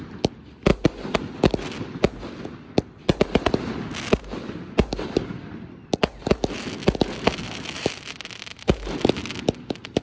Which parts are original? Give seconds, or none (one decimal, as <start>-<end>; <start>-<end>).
0.0-10.0